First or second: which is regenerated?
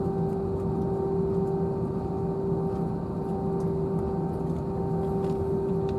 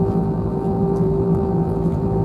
second